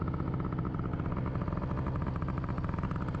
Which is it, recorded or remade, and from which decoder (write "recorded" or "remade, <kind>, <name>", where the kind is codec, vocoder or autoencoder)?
recorded